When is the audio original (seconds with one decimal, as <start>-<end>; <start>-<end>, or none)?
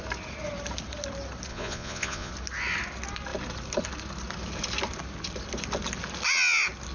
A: 0.0-1.5; 2.3-6.9